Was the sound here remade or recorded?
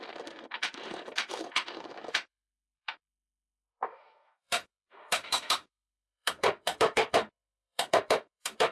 remade